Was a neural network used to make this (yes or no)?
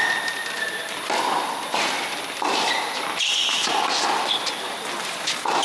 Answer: no